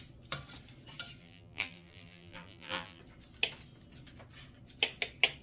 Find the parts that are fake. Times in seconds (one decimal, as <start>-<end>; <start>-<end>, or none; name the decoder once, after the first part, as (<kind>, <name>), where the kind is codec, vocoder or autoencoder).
1.2-3.0 (vocoder, BigVGAN v2)